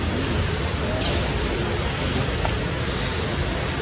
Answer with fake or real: real